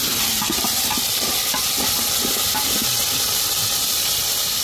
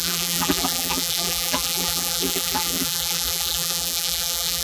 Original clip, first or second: first